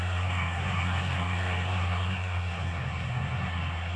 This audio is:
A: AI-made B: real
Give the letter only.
A